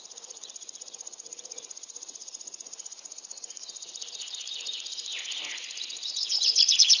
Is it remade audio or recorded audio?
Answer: remade